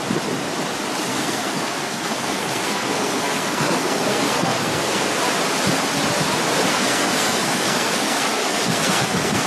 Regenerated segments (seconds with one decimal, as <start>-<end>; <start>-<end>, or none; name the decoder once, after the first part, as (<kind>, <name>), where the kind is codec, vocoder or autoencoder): 1.1-5.2 (codec, SNAC); 6.7-9.5